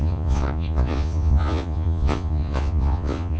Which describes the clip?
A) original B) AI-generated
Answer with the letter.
B